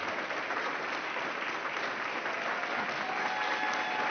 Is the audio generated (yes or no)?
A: no